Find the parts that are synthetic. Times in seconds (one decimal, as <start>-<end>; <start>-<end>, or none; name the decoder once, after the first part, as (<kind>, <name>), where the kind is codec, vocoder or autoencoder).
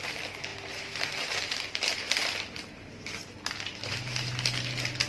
0.0-0.5 (vocoder, BigVGAN v2); 1.4-5.1